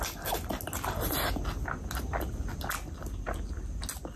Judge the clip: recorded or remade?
recorded